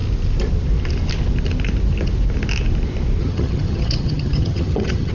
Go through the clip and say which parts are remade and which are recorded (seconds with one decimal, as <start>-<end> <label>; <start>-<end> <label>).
0.0-3.2 recorded; 3.2-5.1 remade